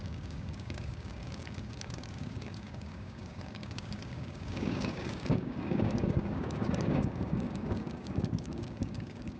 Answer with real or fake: fake